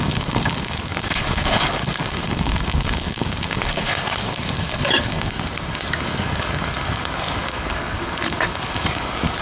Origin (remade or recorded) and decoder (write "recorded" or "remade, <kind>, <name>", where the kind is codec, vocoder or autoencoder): remade, codec, DAC